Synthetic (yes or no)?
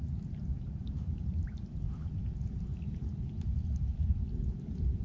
no